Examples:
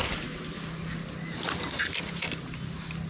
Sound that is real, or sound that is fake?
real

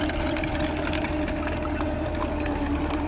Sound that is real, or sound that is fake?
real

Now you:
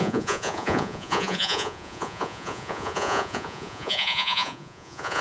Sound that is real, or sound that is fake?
fake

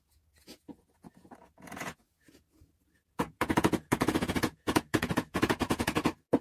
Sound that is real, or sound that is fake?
fake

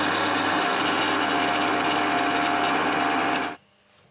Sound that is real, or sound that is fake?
real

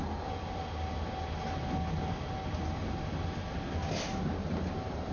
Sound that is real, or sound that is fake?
real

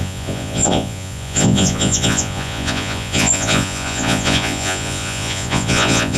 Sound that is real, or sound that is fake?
fake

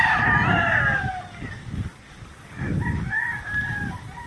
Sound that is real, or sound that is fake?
real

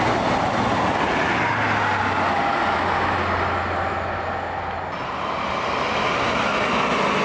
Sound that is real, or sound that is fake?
real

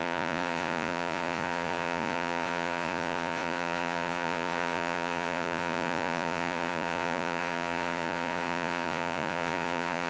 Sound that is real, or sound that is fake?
fake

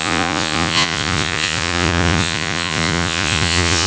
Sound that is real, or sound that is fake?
fake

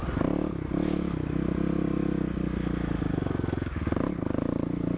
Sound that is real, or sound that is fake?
real